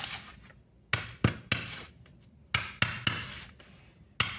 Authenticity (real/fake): real